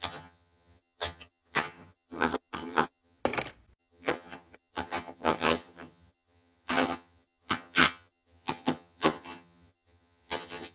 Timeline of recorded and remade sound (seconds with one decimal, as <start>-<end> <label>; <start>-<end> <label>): 0.0-3.2 remade; 3.2-3.8 recorded; 3.8-10.7 remade